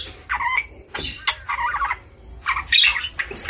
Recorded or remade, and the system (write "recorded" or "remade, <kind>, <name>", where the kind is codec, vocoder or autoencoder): recorded